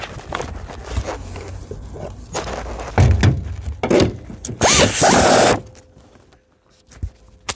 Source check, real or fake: real